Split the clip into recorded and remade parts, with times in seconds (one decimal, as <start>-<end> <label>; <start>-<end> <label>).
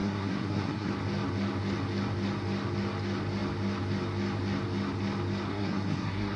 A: 0.0-0.9 remade; 0.9-5.5 recorded; 5.5-6.4 remade